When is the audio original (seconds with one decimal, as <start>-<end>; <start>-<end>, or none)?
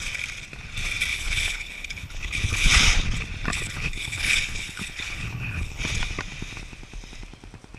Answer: 0.0-1.1; 2.8-3.5; 5.8-7.8